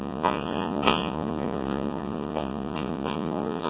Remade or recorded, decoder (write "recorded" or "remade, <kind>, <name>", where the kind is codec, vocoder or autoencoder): remade, vocoder, Vocos